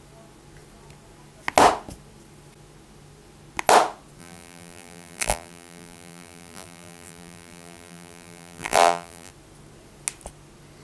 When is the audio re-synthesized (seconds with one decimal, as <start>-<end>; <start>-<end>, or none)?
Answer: 4.2-9.3